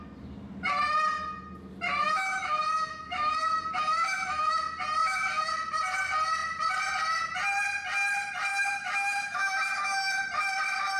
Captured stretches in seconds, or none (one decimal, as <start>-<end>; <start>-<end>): 0.0-2.0; 4.6-5.0; 5.5-8.5; 10.2-11.0